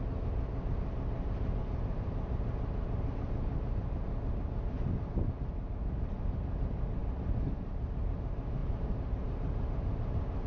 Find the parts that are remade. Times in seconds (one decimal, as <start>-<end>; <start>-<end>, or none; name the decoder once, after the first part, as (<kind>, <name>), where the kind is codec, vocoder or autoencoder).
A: 8.6-9.2 (vocoder, BigVGAN v2)

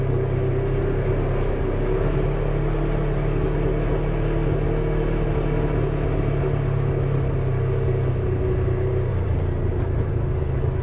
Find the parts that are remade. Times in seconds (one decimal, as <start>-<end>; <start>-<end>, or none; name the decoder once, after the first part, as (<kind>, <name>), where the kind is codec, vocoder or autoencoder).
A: 9.1-10.1 (vocoder, BigVGAN v2)

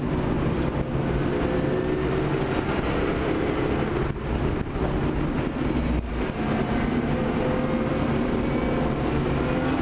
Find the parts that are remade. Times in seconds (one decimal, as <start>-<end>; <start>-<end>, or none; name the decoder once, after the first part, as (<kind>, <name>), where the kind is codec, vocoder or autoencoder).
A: none

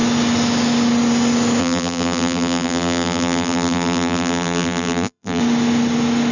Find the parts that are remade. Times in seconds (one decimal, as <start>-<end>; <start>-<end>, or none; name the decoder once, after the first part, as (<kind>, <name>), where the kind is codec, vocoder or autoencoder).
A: 1.6-5.4 (vocoder, BigVGAN v2)

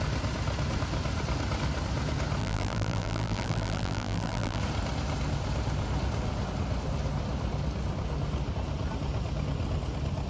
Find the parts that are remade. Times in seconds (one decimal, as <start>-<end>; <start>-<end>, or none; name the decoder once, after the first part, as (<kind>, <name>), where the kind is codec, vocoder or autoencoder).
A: 2.4-4.6 (vocoder, BigVGAN v2)

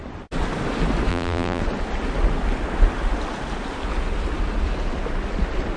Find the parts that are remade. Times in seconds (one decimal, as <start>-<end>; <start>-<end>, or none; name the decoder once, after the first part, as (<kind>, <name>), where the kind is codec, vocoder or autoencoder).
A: 1.1-1.6 (vocoder, BigVGAN v2)

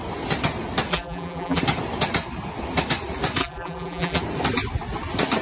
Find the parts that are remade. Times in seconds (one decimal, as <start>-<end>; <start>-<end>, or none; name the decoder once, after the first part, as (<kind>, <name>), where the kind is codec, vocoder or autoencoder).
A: 0.9-1.6 (vocoder, BigVGAN v2); 3.4-4.2

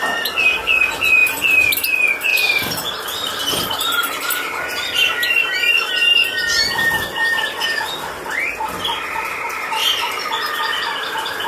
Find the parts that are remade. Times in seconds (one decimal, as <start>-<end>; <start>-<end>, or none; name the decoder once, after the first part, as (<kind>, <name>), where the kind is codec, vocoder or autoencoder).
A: 1.2-1.7 (vocoder, BigVGAN v2); 2.3-5.9; 9.8-10.7